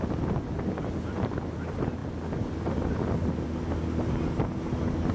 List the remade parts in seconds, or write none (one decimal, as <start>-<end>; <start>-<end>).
none